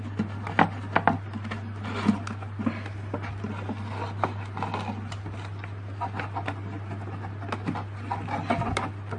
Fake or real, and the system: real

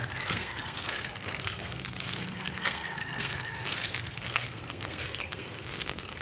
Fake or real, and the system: fake, codec, SNAC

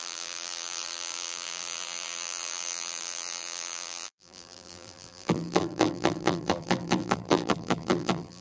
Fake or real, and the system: fake, vocoder, BigVGAN v2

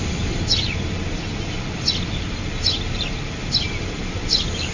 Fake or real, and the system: real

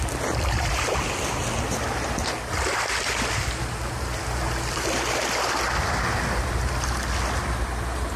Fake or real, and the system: real